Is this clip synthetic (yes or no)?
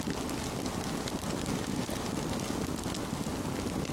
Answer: no